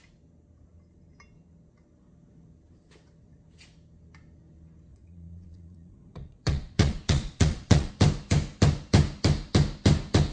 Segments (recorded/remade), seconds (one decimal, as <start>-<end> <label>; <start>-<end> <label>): 0.0-4.9 recorded; 4.9-7.9 remade; 7.9-10.3 recorded